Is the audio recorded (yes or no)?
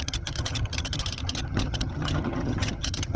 no